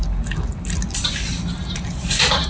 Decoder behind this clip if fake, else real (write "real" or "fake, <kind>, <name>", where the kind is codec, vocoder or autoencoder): real